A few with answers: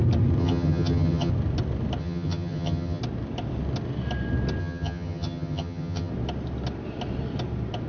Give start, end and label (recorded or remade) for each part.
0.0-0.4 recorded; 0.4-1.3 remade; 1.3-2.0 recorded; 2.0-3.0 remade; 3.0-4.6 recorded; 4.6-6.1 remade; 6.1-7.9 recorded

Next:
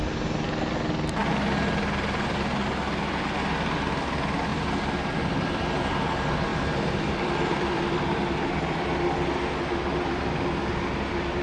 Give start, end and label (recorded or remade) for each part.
0.0-4.5 recorded; 4.5-5.5 remade; 5.5-6.5 recorded; 6.5-8.0 remade; 8.0-11.4 recorded

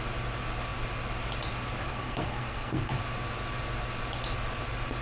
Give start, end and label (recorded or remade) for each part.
0.0-1.9 recorded; 1.9-2.9 remade; 2.9-5.0 recorded